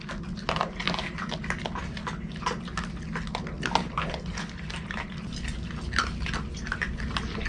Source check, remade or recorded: recorded